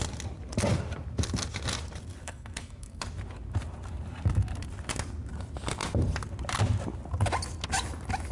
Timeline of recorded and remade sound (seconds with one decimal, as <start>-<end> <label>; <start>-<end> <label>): 0.0-2.2 recorded; 2.2-3.0 remade; 3.0-8.3 recorded